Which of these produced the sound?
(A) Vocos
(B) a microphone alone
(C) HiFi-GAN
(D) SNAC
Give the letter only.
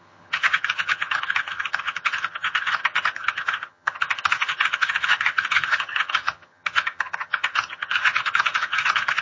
C